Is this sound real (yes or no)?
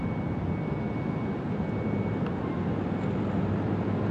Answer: yes